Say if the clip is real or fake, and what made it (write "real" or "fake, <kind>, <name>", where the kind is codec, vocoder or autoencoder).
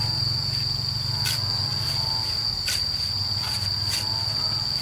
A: real